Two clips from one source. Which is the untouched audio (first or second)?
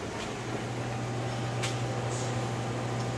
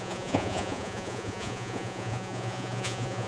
first